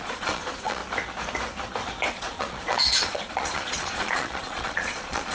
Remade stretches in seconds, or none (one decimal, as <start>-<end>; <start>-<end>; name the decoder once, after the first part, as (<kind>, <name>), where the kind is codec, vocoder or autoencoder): 0.0-0.8 (vocoder, Vocos); 2.1-5.3